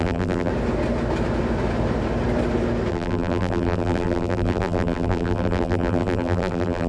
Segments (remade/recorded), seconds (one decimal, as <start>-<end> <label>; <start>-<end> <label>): 0.0-0.5 remade; 0.5-2.9 recorded; 2.9-6.9 remade